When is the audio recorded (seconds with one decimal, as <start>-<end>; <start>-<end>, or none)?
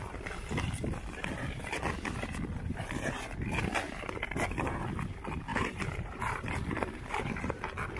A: 0.0-5.5; 7.2-8.0